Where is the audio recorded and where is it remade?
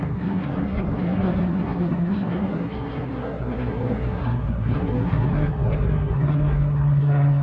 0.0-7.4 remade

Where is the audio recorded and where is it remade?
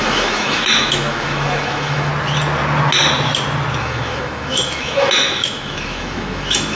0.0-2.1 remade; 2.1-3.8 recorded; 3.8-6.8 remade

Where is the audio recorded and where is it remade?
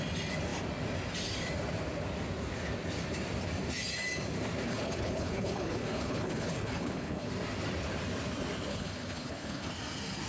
0.0-4.7 recorded; 4.7-7.3 remade; 7.3-8.7 recorded; 8.7-9.7 remade; 9.7-10.3 recorded